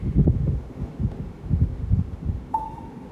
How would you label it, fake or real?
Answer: fake